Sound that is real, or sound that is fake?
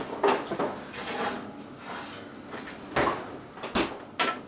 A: real